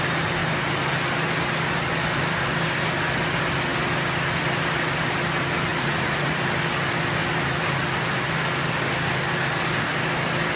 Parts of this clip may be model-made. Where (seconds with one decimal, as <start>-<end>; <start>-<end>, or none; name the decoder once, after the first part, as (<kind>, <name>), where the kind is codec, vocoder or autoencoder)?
5.7-6.4 (vocoder, Vocos)